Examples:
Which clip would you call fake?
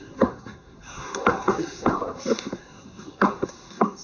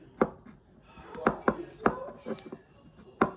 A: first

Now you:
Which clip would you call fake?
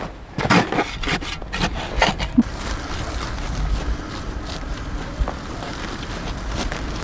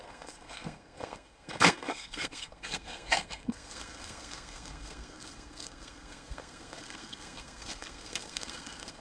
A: second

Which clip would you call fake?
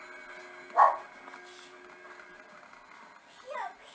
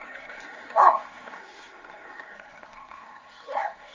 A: second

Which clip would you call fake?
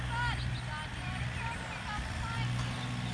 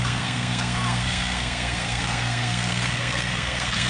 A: second